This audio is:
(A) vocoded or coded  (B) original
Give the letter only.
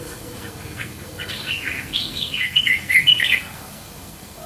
A